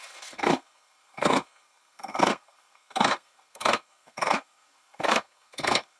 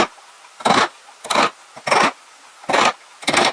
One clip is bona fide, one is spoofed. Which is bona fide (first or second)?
second